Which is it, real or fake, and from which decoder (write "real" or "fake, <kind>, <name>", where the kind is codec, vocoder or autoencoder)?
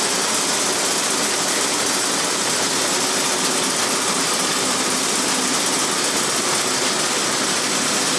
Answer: real